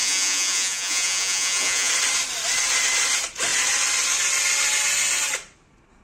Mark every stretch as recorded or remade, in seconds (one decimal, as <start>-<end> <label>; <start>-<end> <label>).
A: 0.0-1.9 remade; 1.9-6.0 recorded